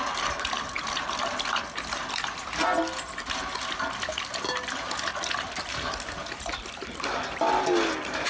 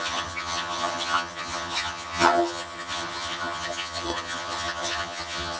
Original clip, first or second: first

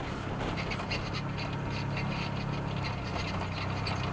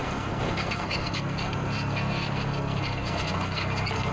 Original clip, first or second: first